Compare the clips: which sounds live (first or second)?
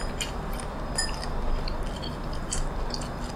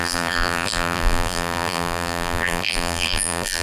first